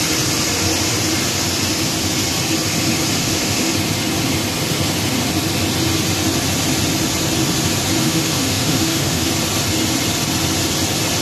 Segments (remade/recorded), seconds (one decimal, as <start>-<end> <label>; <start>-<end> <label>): 0.0-3.2 recorded; 3.2-3.7 remade; 3.7-8.0 recorded; 8.0-9.3 remade; 9.3-11.2 recorded